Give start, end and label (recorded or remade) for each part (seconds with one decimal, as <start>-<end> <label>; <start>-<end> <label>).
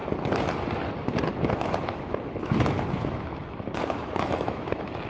0.0-1.3 recorded; 1.3-5.1 remade